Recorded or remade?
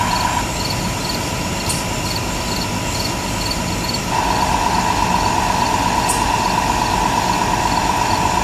recorded